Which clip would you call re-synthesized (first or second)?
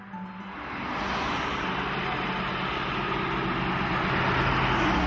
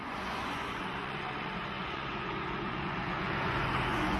second